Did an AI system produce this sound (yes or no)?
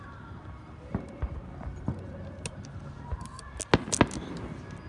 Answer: no